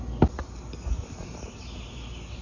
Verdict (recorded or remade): recorded